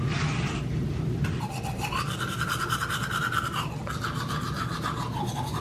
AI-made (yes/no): no